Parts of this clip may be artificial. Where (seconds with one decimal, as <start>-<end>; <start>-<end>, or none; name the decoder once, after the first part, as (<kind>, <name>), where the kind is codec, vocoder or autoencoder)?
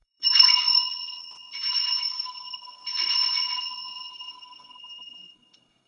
0.0-0.8 (codec, SNAC); 2.0-2.8; 4.1-5.9